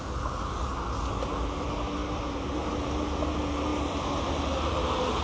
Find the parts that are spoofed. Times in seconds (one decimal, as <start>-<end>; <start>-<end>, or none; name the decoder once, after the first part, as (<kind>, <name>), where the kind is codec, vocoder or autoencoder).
none